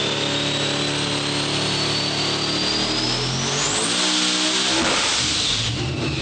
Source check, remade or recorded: recorded